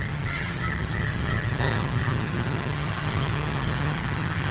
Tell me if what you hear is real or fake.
fake